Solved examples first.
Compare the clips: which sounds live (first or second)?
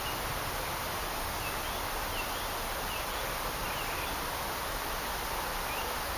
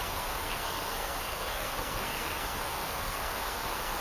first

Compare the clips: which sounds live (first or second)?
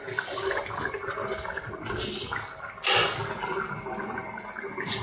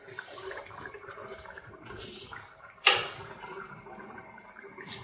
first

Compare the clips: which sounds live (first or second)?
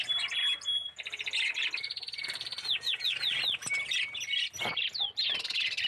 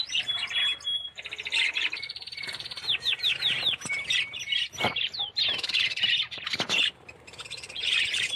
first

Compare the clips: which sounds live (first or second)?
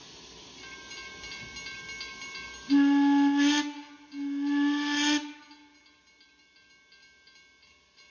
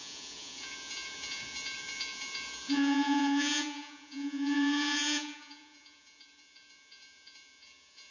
first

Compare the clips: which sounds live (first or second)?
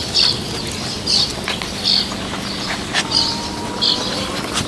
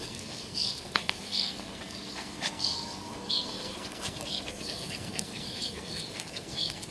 first